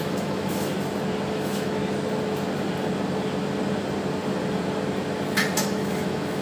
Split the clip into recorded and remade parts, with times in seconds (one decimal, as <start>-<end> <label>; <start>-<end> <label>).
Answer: 0.0-0.7 remade; 0.7-1.3 recorded; 1.3-1.8 remade; 1.8-5.6 recorded; 5.6-6.4 remade